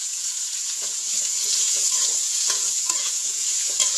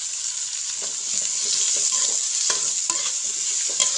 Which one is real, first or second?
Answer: second